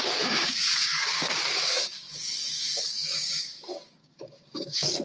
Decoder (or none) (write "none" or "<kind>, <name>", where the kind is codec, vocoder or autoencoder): codec, DAC